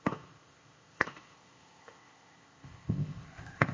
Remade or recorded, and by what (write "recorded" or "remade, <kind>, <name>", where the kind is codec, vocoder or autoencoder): remade, codec, ZipCodec